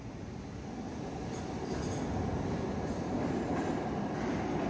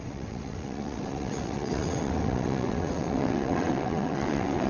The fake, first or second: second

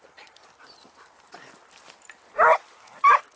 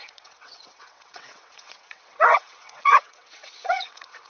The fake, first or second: second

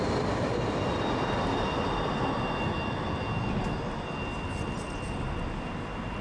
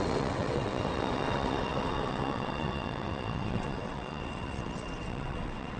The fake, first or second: second